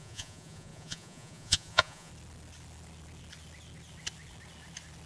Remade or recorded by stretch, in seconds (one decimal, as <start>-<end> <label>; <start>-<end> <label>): 0.0-2.1 remade; 2.1-5.1 recorded